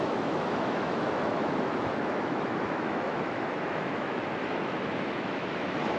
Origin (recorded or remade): remade